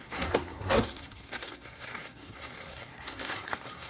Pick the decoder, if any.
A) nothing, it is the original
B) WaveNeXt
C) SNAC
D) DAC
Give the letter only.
C